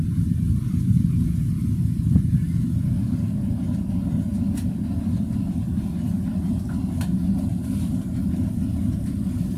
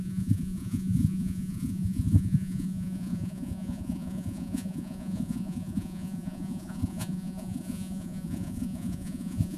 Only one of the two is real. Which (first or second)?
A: first